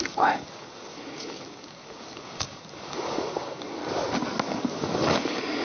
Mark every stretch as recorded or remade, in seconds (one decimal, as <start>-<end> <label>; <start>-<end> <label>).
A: 0.0-3.8 remade; 3.8-4.4 recorded; 4.4-5.6 remade